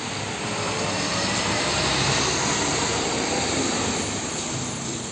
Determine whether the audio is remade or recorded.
remade